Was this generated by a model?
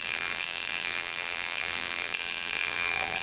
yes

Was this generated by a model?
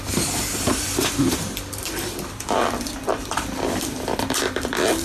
yes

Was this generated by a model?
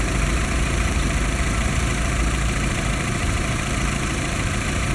yes